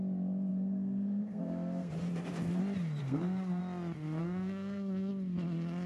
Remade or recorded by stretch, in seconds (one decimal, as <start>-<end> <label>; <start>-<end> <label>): 0.0-0.5 recorded; 0.5-1.9 remade; 1.9-3.0 recorded; 3.0-3.6 remade; 3.6-4.2 recorded; 4.2-5.1 remade; 5.1-5.9 recorded